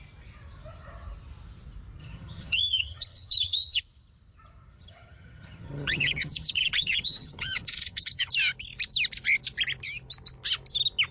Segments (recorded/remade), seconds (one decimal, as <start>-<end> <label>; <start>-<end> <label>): 0.0-2.0 recorded; 2.0-3.8 remade; 3.8-4.7 recorded; 4.7-8.3 remade; 8.3-11.1 recorded